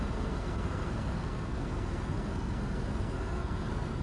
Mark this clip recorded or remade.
remade